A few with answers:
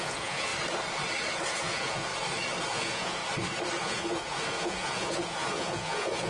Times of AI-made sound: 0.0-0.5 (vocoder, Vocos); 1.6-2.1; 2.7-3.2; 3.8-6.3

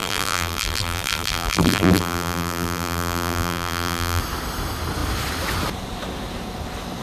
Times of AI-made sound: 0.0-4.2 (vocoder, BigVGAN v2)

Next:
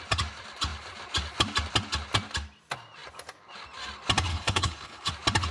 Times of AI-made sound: 4.3-5.1 (codec, HILCodec)

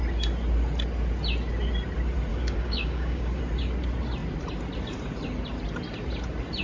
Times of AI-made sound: 2.3-3.4 (codec, DAC)

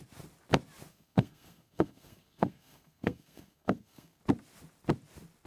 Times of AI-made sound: 0.9-4.2 (codec, SNAC)

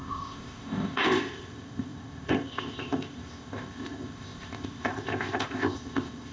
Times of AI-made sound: 0.0-6.3 (codec, ZipCodec)

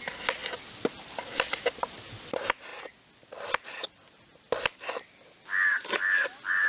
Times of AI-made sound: none